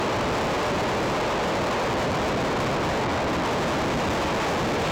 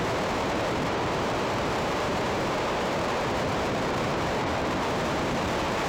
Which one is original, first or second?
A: first